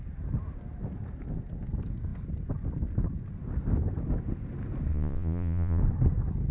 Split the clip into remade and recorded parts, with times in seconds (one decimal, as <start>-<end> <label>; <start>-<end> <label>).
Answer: 0.0-4.9 recorded; 4.9-5.8 remade; 5.8-6.5 recorded